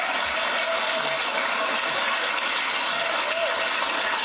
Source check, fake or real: real